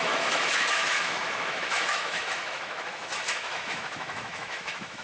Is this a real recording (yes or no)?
no